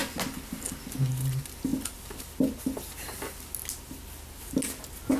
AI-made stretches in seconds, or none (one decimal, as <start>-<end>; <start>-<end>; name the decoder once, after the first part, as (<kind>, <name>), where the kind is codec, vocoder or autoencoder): none